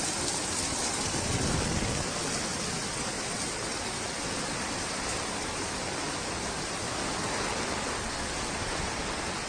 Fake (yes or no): no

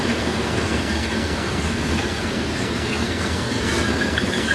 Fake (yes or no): yes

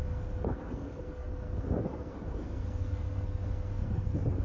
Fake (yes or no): yes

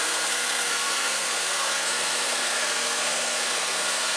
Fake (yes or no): yes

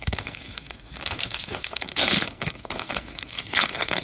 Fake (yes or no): yes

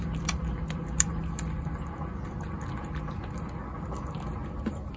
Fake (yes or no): no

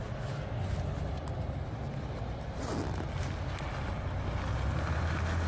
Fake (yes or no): no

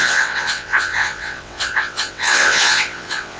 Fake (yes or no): yes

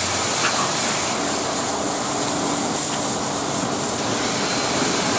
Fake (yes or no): no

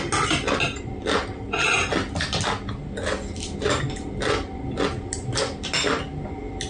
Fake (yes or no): no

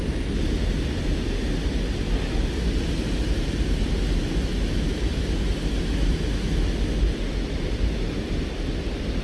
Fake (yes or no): no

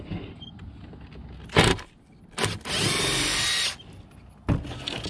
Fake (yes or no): no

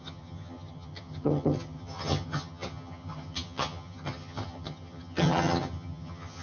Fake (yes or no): yes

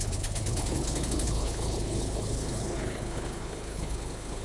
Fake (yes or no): yes